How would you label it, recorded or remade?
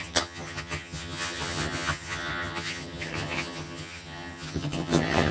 remade